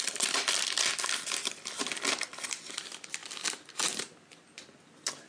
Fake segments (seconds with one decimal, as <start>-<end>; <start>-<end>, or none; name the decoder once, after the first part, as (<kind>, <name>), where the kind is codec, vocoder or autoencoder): none